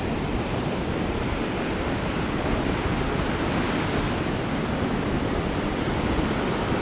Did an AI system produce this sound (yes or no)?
yes